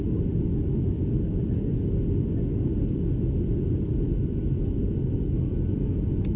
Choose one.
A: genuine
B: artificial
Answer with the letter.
A